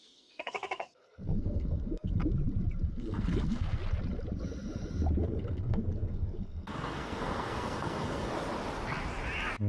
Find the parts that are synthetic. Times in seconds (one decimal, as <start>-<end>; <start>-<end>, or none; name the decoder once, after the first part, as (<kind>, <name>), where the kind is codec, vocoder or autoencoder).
0.0-2.2 (codec, SNAC); 2.9-3.8; 5.2-8.3